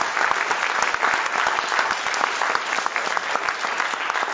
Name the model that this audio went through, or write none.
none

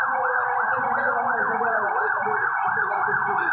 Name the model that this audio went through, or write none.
none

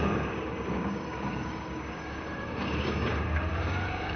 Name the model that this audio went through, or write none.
codec, DAC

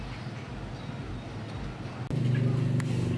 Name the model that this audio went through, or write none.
none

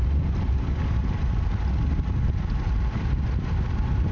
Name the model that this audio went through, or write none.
none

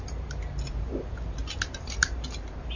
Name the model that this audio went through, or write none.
none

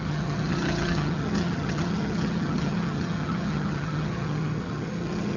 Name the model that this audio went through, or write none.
vocoder, HiFi-GAN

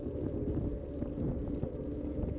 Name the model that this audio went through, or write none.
none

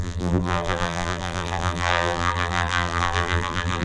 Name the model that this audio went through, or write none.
vocoder, BigVGAN v2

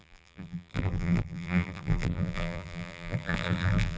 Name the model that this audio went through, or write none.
vocoder, BigVGAN v2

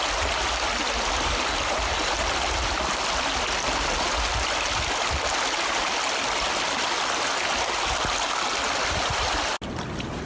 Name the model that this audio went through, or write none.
none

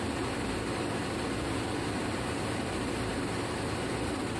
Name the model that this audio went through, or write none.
vocoder, BigVGAN v2